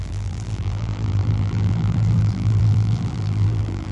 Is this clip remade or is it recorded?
remade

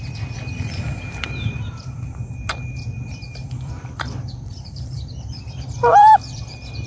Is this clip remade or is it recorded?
remade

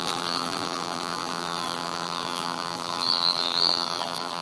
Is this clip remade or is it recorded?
remade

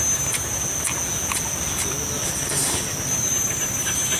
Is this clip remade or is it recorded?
recorded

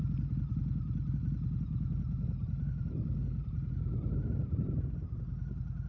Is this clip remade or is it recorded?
recorded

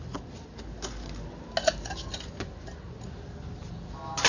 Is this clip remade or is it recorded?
recorded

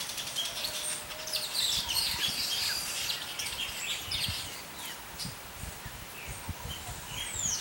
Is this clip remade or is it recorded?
recorded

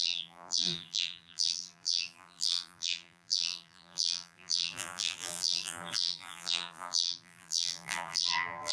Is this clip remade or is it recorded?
remade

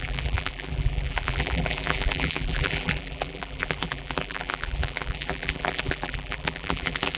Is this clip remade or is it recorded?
remade